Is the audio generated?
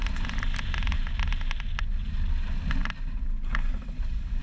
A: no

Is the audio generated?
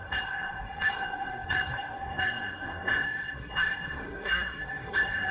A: yes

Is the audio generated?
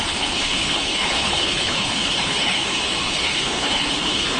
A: yes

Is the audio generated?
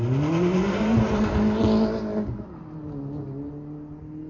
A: no